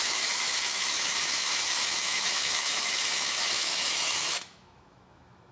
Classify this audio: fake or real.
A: fake